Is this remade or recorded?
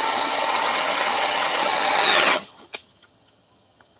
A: remade